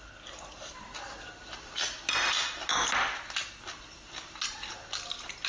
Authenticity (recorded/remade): recorded